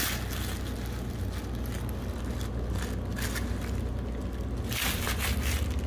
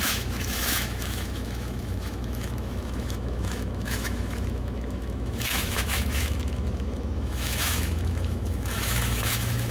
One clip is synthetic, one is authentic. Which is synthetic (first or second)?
second